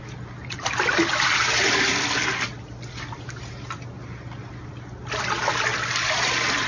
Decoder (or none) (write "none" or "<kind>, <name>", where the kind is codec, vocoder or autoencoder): none